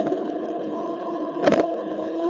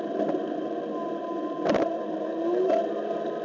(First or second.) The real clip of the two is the second